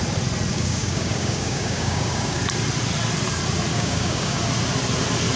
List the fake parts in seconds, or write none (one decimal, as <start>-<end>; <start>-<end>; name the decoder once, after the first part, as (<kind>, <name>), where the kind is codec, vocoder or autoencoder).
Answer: 0.5-2.4 (codec, DAC); 3.7-4.4